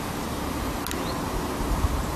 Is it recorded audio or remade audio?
recorded